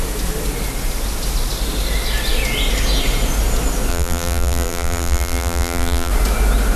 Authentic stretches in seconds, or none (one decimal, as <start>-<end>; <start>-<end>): 0.0-3.9; 6.1-6.8